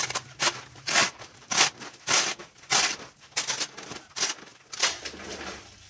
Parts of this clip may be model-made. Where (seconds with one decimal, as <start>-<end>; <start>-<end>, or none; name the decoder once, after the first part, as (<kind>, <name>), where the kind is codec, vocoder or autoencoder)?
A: 1.0-1.6 (vocoder, BigVGAN v2); 2.4-3.2

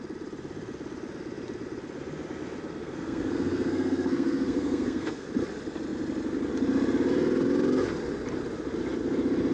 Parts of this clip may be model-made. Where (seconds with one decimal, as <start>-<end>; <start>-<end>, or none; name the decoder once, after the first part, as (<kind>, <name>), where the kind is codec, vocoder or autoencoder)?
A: 2.8-5.3 (codec, SNAC)

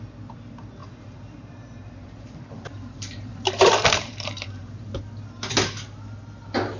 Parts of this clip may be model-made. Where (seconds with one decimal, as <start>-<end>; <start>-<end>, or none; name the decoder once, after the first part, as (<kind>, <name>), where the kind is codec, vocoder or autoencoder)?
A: 0.8-4.9 (vocoder, BigVGAN v2)

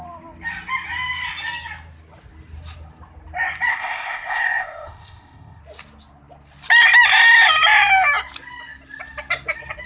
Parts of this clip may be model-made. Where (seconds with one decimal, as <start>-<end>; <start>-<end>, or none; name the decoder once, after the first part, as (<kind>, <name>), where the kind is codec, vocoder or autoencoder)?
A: 3.7-5.6 (codec, ZipCodec)